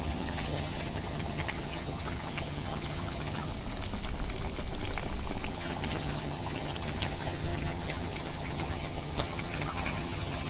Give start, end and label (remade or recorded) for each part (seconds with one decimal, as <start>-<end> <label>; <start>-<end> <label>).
0.0-3.5 remade; 3.5-5.5 recorded; 5.5-10.5 remade